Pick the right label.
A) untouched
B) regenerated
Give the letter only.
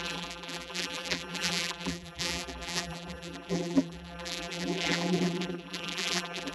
B